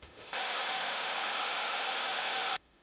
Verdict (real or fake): fake